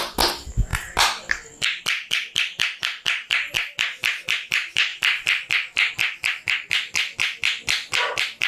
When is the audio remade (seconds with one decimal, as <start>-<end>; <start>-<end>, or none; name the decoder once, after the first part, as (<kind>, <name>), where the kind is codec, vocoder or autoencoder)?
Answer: 4.9-5.9 (vocoder, BigVGAN v2)